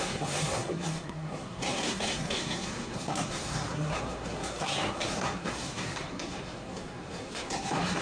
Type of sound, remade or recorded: remade